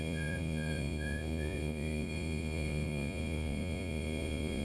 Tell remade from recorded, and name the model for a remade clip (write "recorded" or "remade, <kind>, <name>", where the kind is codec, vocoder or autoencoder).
remade, vocoder, Vocos